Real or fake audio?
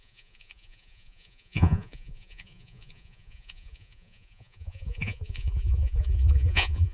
fake